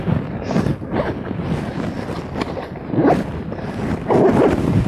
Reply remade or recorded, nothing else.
remade